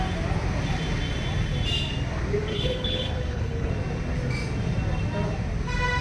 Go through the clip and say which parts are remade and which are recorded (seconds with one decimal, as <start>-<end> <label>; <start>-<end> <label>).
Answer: 0.0-2.5 recorded; 2.5-3.7 remade; 3.7-6.0 recorded